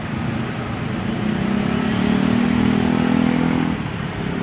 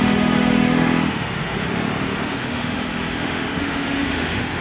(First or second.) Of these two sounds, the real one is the first